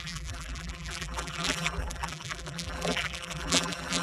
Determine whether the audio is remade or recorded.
remade